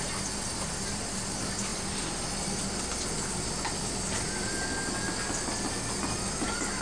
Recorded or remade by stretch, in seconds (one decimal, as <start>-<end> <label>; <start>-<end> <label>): 0.0-6.8 recorded